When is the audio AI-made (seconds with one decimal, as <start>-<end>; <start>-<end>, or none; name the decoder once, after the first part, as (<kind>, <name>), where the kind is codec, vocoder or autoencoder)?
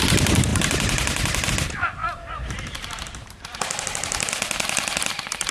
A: 2.0-3.6 (vocoder, BigVGAN v2)